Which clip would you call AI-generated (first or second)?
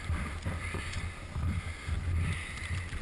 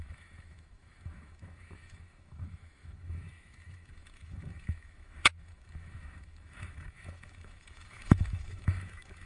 second